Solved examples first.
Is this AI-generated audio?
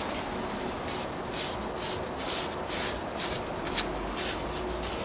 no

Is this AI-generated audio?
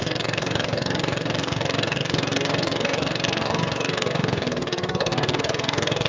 yes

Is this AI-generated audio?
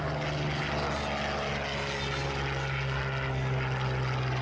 no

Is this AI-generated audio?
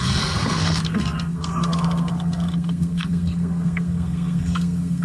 yes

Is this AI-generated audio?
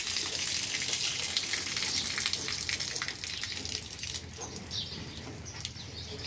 no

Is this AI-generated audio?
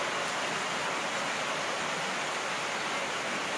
no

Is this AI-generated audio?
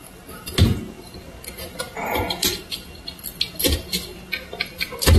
no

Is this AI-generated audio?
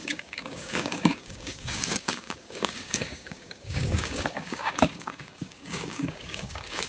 yes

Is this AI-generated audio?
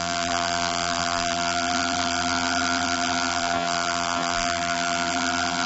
yes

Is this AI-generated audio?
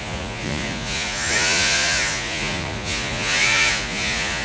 yes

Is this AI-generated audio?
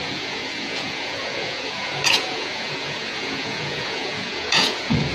yes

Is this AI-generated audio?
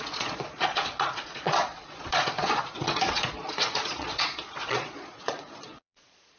yes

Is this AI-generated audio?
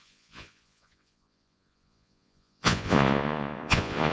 yes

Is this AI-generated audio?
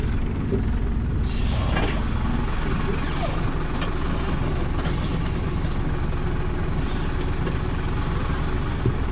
no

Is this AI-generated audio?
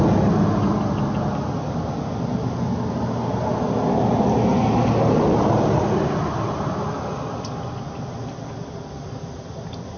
no